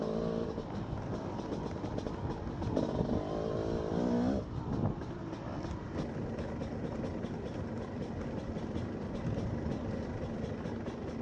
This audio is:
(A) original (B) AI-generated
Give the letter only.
A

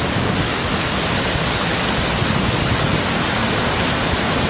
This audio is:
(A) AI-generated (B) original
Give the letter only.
B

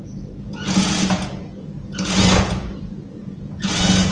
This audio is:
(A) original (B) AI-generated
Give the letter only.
B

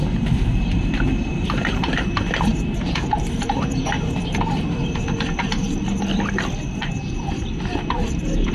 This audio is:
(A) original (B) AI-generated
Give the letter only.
B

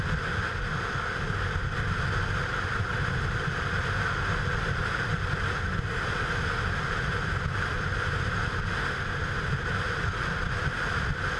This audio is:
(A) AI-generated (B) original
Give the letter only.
B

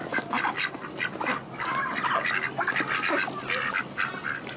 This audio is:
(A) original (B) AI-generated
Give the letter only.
A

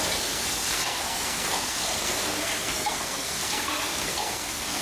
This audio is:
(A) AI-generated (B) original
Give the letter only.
A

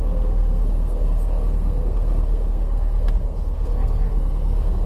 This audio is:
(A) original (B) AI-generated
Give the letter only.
B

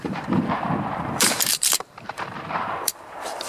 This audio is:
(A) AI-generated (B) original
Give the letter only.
A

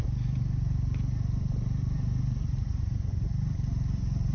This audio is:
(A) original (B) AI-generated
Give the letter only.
B